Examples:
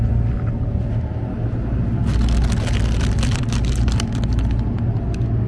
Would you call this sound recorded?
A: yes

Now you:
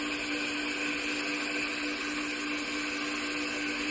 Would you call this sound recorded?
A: yes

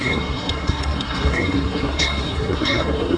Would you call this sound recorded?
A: no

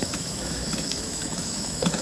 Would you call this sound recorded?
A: no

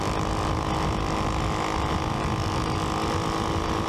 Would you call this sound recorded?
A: yes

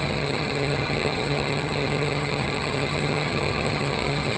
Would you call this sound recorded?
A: no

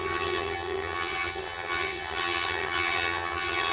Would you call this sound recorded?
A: no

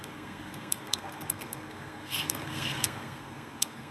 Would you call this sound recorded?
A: no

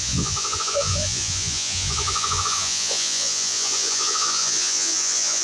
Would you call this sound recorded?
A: no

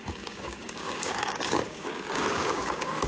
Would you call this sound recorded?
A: no